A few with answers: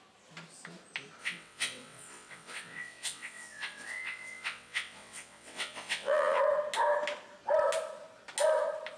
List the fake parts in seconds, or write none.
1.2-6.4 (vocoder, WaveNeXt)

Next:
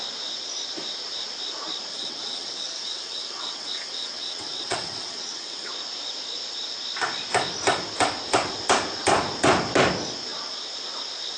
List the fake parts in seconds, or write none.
1.9-5.7 (vocoder, WaveNeXt)

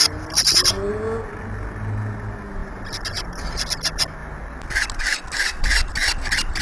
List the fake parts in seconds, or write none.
none

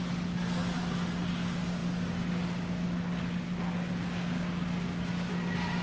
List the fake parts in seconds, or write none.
none

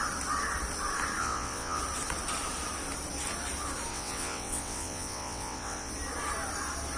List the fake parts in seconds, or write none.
1.2-1.8 (vocoder, WaveNeXt); 3.9-5.9

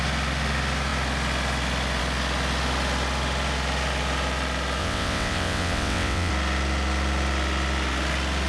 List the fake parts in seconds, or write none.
4.8-6.3 (vocoder, WaveNeXt)

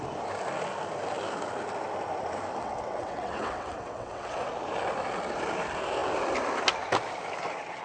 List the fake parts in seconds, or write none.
2.6-4.5 (vocoder, WaveNeXt)